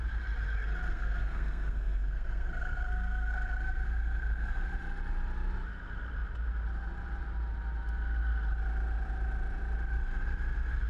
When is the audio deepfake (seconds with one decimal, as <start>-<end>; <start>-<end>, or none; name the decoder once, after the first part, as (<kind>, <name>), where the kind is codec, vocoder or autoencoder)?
0.9-4.6 (codec, SNAC)